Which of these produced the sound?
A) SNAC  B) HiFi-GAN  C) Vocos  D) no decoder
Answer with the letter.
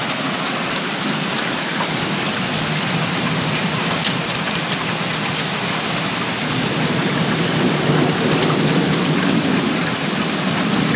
D